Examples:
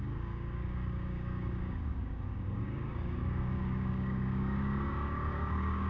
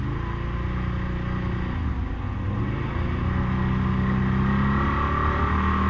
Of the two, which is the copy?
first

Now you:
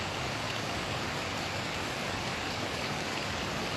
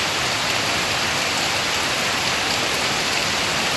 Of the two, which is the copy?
first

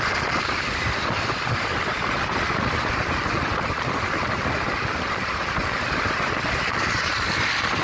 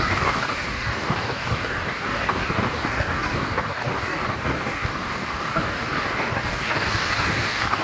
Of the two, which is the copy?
second